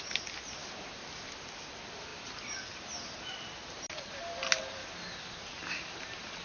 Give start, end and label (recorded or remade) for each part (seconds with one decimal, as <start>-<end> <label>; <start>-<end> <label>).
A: 0.0-6.4 recorded

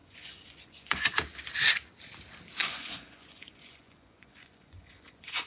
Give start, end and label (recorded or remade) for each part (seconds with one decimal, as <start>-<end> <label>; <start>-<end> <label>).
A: 0.0-1.1 remade; 1.1-2.6 recorded; 2.6-5.5 remade

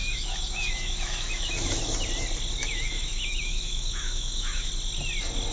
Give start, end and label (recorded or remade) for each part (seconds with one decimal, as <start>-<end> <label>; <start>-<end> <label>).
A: 0.0-1.8 remade; 1.8-2.6 recorded; 2.6-4.7 remade; 4.7-5.5 recorded

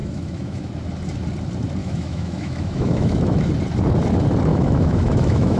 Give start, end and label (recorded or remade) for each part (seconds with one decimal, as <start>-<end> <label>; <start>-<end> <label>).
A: 0.0-0.7 remade; 0.7-1.8 recorded; 1.8-3.5 remade; 3.5-4.5 recorded; 4.5-5.6 remade

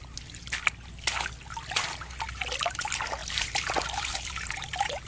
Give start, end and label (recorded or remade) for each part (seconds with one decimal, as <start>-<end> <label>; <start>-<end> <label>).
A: 0.0-3.2 recorded; 3.2-5.1 remade